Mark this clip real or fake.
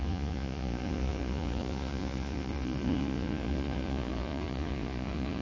fake